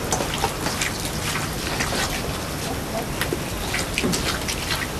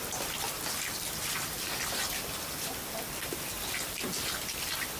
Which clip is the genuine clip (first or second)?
first